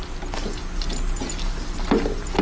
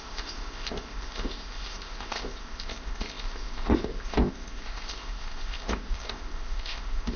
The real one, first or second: first